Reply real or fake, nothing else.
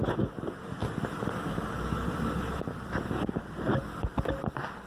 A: real